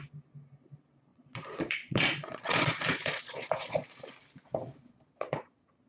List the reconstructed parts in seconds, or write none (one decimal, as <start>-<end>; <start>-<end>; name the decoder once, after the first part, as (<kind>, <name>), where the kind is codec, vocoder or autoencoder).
1.1-4.0 (vocoder, Vocos); 5.1-5.9